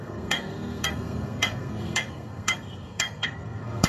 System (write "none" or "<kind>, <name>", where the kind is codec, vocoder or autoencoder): codec, SNAC